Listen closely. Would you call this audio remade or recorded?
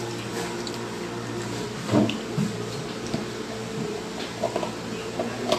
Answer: recorded